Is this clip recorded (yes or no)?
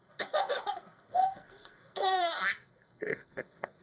no